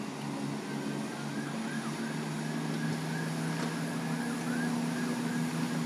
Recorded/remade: recorded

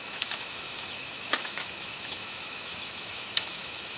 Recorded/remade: remade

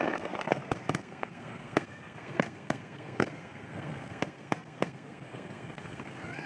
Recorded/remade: remade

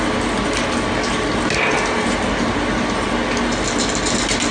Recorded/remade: recorded